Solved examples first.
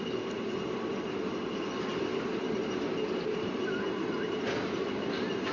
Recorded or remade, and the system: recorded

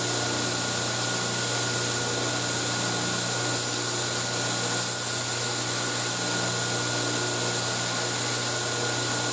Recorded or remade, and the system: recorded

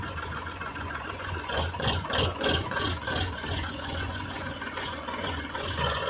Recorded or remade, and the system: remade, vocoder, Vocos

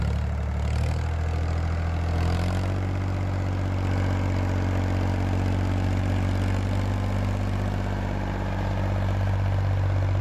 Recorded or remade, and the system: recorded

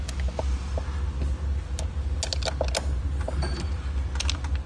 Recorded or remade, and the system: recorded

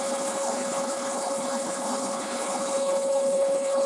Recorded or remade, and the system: remade, codec, HILCodec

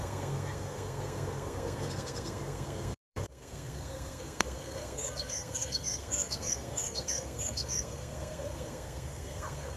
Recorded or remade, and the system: remade, codec, SNAC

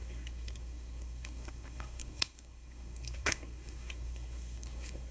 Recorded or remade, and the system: remade, codec, SNAC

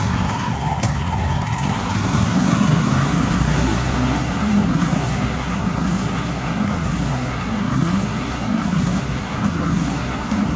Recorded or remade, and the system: remade, codec, SNAC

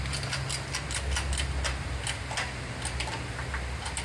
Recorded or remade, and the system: recorded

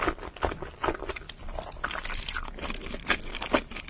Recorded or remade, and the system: recorded